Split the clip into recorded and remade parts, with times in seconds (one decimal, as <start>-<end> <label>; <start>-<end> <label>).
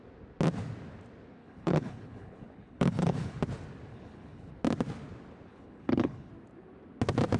0.0-1.4 recorded; 1.4-3.4 remade; 3.4-3.9 recorded; 3.9-4.5 remade; 4.5-5.5 recorded; 5.5-6.3 remade; 6.3-7.4 recorded